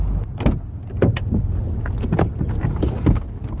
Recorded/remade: recorded